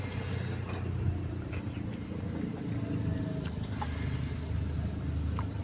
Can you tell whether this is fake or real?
real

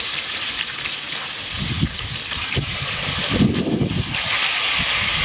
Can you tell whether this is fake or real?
real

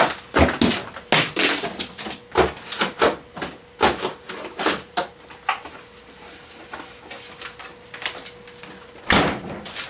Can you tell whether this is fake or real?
real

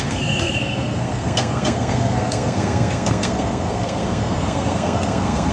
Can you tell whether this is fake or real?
fake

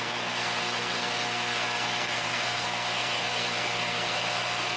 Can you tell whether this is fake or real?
fake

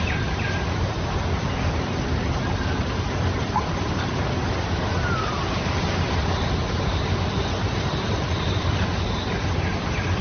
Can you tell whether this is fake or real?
real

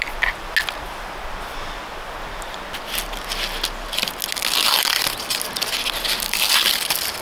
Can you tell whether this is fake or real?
real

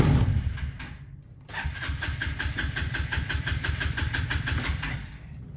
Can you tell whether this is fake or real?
fake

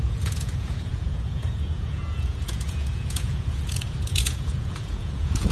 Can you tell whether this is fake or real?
fake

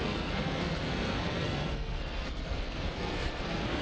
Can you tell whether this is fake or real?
fake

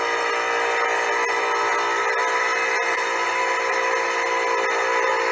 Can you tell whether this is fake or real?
real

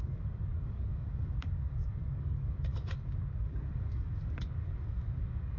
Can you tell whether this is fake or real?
fake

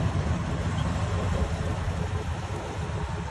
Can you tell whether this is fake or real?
real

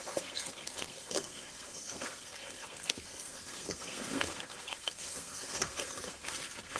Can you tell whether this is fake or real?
fake